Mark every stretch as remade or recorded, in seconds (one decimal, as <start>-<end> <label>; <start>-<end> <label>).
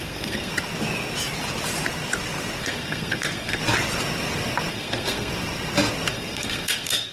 0.0-0.5 remade; 0.5-2.6 recorded; 2.6-3.6 remade; 3.6-4.7 recorded; 4.7-5.3 remade; 5.3-6.1 recorded; 6.1-7.1 remade